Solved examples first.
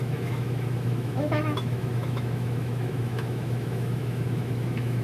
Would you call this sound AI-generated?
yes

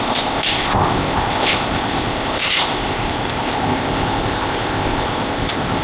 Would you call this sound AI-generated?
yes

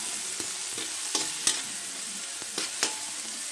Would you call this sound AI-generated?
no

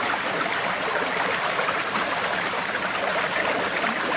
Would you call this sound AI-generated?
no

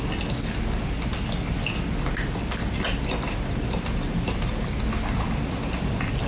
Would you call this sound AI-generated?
no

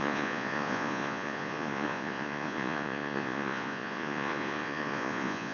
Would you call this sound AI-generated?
yes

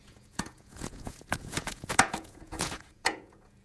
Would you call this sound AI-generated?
yes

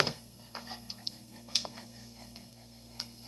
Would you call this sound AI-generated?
yes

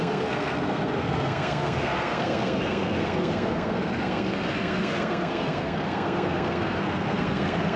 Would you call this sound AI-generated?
yes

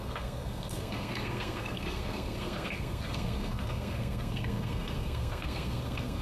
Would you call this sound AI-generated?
yes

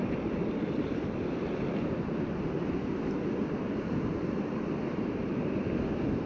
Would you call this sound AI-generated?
no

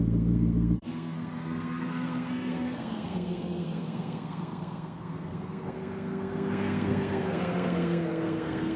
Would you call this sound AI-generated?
yes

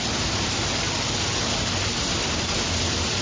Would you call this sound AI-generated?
no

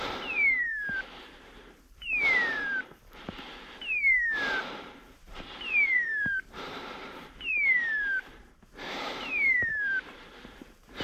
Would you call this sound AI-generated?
yes